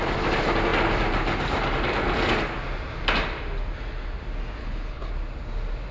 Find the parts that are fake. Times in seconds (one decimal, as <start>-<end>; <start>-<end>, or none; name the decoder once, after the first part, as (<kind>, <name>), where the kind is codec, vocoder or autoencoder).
4.6-5.1 (codec, HILCodec)